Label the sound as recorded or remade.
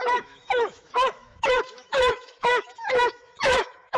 remade